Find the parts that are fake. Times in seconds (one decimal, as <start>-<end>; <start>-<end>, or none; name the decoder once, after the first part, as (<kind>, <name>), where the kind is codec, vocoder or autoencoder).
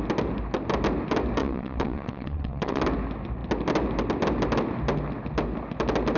1.4-2.8 (vocoder, WaveNeXt)